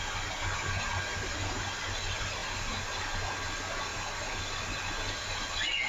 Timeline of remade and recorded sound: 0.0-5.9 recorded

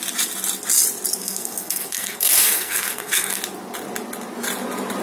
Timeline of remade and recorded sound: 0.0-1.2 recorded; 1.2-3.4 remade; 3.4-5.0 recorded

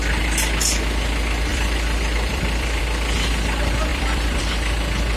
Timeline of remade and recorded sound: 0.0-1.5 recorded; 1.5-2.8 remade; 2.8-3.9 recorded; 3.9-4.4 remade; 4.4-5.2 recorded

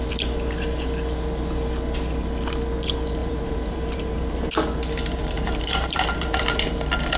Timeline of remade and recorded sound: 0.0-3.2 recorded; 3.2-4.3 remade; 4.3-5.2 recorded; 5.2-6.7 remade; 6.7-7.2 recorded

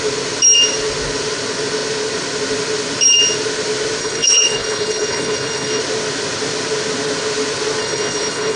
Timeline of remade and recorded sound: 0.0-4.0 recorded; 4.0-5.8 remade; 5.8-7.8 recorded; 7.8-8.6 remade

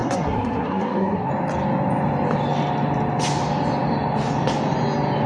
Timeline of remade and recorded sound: 0.0-1.3 remade; 1.3-5.3 recorded